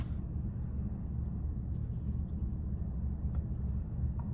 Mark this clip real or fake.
real